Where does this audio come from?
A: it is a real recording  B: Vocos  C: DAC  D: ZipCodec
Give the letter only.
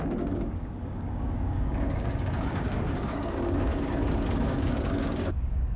C